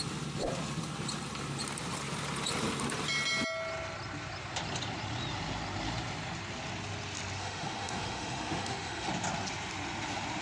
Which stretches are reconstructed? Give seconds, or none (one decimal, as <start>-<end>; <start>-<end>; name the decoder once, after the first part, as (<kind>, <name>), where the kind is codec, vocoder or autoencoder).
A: 7.4-9.1 (autoencoder, DAC-VAE)